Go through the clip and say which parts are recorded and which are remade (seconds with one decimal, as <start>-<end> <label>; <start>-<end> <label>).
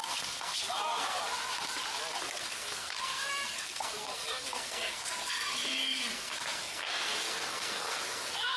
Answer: 0.0-1.2 remade; 1.2-2.2 recorded; 2.2-8.6 remade